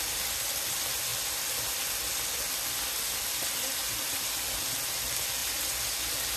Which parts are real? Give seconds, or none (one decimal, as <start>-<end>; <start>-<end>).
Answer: 0.0-6.4